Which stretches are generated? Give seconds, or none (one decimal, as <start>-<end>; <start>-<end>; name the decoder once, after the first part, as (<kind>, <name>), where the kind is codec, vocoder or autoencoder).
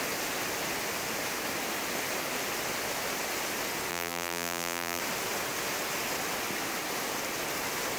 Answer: 3.9-5.0 (vocoder, BigVGAN v2)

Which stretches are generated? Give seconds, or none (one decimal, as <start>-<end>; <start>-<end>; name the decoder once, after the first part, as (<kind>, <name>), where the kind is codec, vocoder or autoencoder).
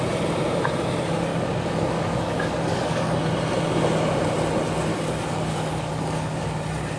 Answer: 1.3-3.2 (codec, DAC); 4.9-6.6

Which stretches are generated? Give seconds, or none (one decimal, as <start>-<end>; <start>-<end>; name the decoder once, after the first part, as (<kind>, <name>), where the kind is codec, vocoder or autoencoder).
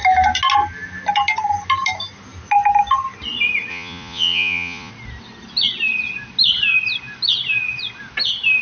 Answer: 3.7-4.9 (vocoder, Vocos)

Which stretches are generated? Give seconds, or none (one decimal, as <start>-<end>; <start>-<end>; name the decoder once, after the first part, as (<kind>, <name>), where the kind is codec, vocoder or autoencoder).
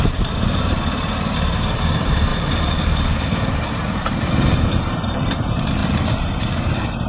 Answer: 0.0-7.1 (vocoder, BigVGAN v2)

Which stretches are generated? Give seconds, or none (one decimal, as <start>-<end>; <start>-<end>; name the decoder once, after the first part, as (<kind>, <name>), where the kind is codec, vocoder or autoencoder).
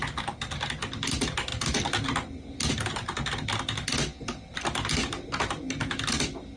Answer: none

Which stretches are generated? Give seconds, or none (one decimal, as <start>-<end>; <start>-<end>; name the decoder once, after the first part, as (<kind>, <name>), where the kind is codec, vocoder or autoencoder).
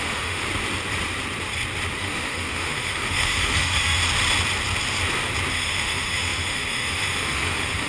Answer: 0.0-0.4 (autoencoder, DAC-VAE); 2.0-4.0; 5.5-7.9